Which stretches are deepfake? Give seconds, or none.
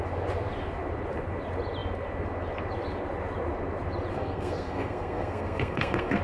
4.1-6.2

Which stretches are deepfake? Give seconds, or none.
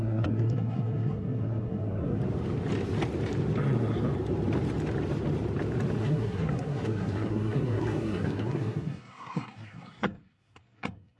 0.0-2.2; 6.0-11.2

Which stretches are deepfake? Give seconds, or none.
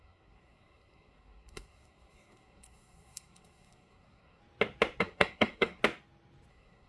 0.0-4.4; 5.0-5.8; 6.5-6.9